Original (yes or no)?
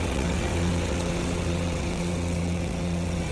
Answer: no